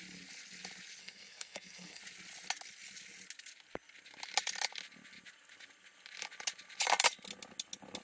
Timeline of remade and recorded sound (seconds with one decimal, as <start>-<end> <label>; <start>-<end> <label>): 0.0-1.0 recorded; 1.0-2.0 remade; 2.0-8.0 recorded